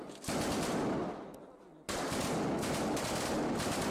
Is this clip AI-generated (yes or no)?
no